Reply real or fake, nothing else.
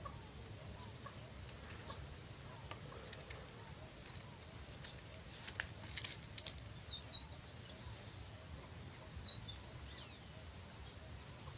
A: real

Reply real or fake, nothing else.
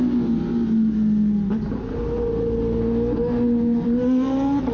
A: real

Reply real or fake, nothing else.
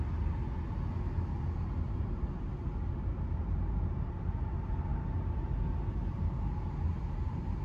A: real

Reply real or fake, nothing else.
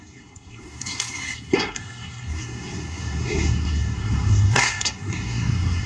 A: fake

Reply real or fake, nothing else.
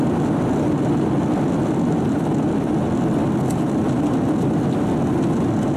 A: real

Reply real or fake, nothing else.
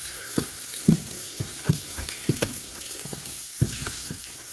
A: fake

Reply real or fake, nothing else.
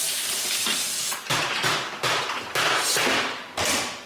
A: real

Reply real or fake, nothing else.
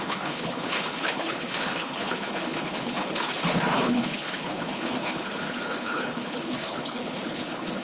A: fake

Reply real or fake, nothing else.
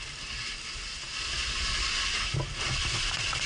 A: real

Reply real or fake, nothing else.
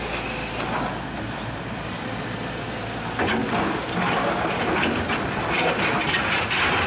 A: real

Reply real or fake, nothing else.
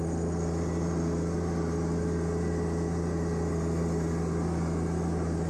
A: real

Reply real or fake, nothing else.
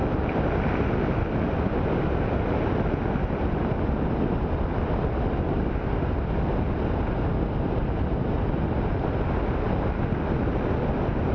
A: real